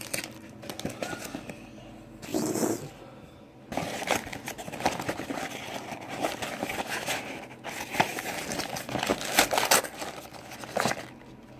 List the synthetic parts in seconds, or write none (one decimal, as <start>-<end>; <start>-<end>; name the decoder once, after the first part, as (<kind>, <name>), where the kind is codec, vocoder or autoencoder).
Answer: 8.1-8.7 (vocoder, BigVGAN v2)